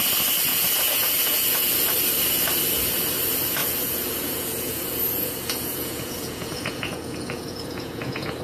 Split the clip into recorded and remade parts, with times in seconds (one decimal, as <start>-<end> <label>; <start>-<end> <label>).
0.0-0.5 recorded; 0.5-1.7 remade; 1.7-3.6 recorded; 3.6-8.4 remade